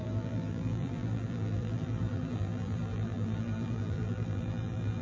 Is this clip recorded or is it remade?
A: remade